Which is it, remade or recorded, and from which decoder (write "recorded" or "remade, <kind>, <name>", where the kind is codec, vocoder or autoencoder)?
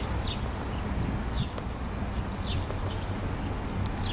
recorded